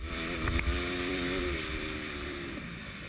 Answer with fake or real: fake